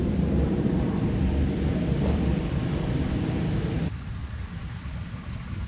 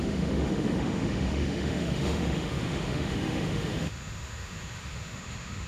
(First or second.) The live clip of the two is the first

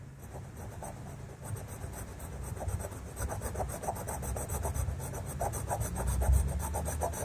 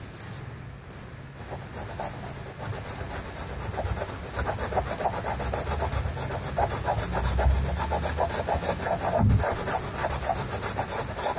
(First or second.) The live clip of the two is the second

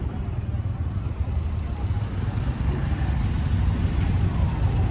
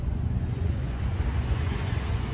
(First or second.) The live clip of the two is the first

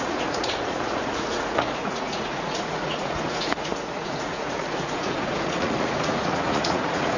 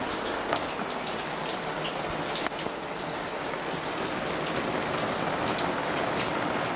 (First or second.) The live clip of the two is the second